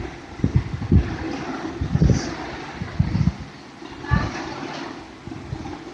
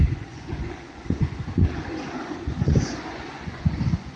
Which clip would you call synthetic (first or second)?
second